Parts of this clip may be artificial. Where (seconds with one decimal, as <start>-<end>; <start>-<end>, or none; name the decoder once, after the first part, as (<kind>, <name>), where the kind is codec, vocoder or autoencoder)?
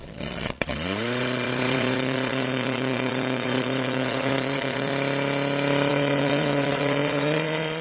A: 0.0-4.9 (vocoder, Vocos); 5.9-7.8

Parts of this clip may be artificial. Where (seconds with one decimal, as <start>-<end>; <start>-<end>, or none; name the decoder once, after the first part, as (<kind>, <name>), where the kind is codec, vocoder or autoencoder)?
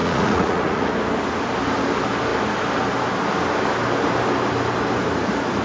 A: 0.0-0.9 (vocoder, Vocos)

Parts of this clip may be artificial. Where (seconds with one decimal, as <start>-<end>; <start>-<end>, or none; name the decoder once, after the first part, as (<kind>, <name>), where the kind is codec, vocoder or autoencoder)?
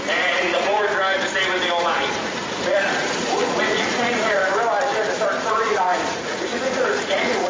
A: 0.0-0.9 (vocoder, Vocos); 1.8-4.4; 5.4-7.5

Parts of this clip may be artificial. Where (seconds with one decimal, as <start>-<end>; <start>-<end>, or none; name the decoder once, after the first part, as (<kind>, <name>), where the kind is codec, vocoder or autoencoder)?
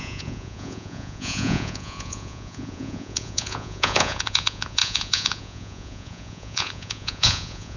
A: 0.0-7.8 (vocoder, Vocos)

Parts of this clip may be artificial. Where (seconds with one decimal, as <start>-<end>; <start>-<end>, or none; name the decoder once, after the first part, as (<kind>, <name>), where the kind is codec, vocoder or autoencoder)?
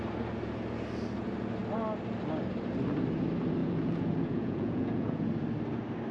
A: 3.6-5.3 (vocoder, Vocos)